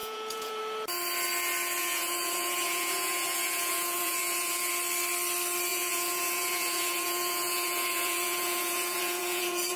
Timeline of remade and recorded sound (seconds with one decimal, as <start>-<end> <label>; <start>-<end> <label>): 0.0-0.6 remade; 0.6-1.8 recorded; 1.8-4.7 remade; 4.7-5.7 recorded; 5.7-9.8 remade